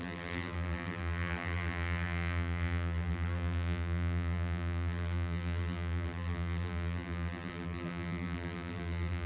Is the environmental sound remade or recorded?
remade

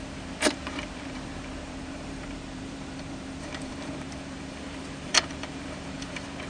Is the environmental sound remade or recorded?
remade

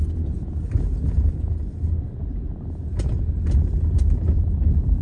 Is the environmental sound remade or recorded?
recorded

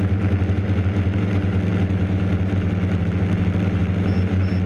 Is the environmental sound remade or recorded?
recorded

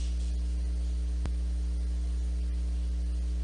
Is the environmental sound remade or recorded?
recorded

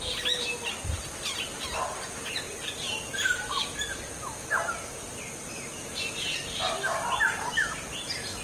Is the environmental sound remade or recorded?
recorded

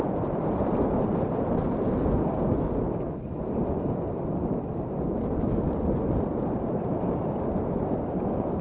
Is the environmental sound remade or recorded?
remade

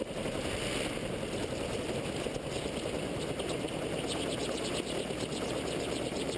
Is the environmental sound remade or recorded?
recorded